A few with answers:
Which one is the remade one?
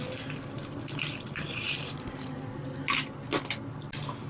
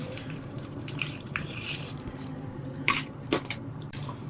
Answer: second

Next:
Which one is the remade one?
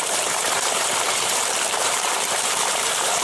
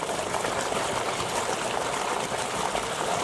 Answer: first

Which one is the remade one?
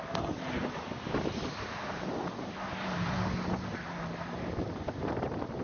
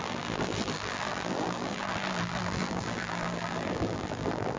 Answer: second